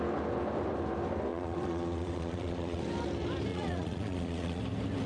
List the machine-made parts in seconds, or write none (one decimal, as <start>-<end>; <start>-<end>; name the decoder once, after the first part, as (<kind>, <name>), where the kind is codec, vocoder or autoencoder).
1.3-2.8 (vocoder, Vocos); 3.5-4.6